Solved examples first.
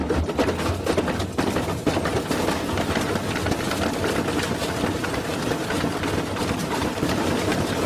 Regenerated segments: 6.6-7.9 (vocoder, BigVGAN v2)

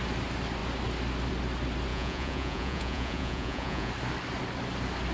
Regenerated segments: 1.9-3.9 (vocoder, Vocos)

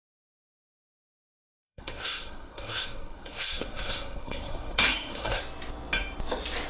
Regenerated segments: 1.4-5.4 (codec, SNAC)